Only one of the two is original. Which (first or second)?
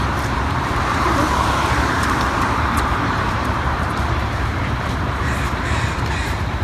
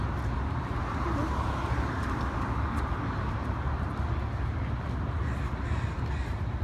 second